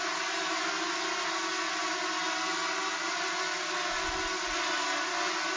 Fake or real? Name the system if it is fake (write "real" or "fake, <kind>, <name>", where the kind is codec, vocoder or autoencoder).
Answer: real